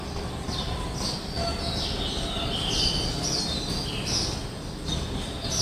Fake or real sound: real